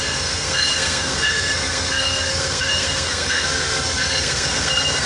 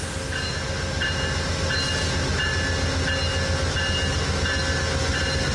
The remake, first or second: first